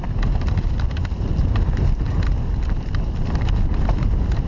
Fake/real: real